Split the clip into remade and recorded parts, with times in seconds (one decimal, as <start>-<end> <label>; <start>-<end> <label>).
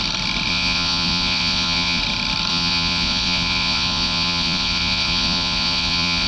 0.0-0.5 recorded; 0.5-2.0 remade; 2.0-2.5 recorded; 2.5-6.3 remade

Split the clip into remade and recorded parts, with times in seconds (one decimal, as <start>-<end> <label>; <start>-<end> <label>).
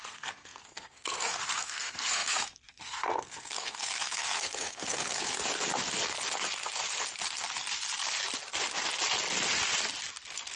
0.0-5.4 remade; 5.4-10.6 recorded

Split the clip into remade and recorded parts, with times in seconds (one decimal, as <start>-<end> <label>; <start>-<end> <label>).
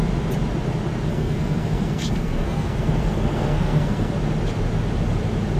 0.0-1.1 recorded; 1.1-4.1 remade; 4.1-5.6 recorded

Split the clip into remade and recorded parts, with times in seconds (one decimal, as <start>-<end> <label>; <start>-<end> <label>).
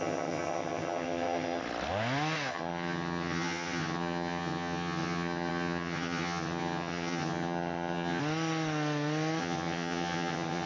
0.0-1.6 remade; 1.6-2.5 recorded; 2.5-8.2 remade; 8.2-9.4 recorded; 9.4-10.7 remade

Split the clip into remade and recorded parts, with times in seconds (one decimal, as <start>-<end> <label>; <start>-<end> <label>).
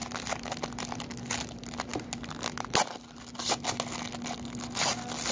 0.0-5.3 recorded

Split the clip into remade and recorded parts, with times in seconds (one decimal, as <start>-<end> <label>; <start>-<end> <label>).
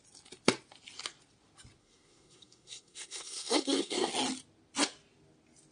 0.0-1.8 recorded; 1.8-4.1 remade; 4.1-5.7 recorded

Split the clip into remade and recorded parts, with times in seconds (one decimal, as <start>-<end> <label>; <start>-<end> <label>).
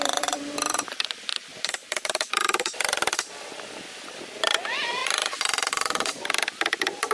0.0-7.1 remade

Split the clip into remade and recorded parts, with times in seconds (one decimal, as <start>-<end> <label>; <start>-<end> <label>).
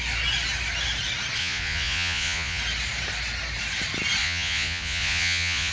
0.0-1.4 recorded; 1.4-2.6 remade; 2.6-4.2 recorded; 4.2-5.7 remade